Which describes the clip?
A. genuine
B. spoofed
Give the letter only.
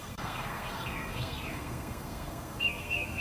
B